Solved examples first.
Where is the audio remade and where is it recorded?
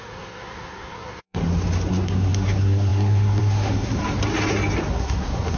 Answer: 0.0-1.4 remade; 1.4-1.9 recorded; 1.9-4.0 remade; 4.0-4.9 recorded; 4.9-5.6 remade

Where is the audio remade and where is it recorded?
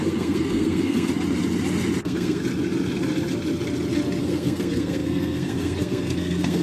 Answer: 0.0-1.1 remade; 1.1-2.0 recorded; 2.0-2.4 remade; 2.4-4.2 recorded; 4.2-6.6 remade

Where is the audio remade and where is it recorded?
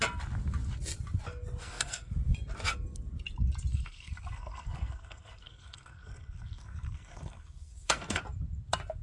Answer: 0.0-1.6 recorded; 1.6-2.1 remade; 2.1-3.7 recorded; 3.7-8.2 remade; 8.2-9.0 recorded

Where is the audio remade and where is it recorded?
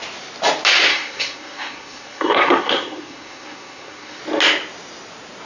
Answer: 0.0-0.9 recorded; 0.9-4.2 remade; 4.2-5.5 recorded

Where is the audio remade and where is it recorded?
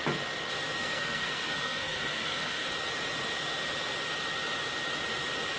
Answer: 0.0-0.8 recorded; 0.8-2.7 remade; 2.7-5.6 recorded